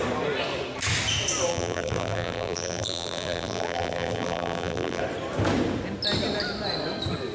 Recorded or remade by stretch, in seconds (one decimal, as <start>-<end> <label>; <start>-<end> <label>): 0.0-1.5 recorded; 1.5-5.0 remade; 5.0-7.3 recorded